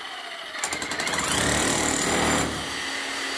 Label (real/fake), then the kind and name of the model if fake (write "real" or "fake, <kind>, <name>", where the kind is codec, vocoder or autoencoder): real